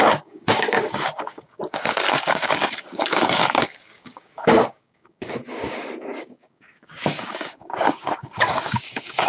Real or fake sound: fake